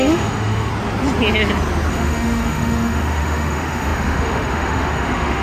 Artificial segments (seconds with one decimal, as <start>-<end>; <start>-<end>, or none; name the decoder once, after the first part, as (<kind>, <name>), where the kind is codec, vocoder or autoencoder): 0.0-0.7 (autoencoder, DAC-VAE); 1.9-5.4